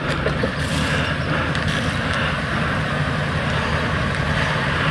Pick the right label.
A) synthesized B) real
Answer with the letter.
A